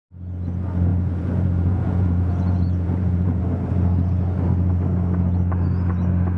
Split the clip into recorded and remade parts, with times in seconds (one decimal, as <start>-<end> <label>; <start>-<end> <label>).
0.0-0.9 recorded; 0.9-3.4 remade; 3.4-6.4 recorded